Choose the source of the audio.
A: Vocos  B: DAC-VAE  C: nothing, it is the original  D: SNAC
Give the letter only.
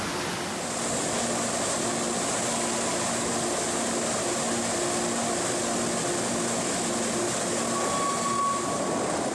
C